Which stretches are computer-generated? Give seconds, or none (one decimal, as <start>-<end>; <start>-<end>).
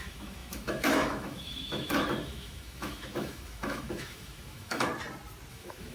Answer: 0.0-4.9; 5.5-5.9